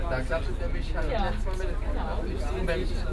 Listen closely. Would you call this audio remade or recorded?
recorded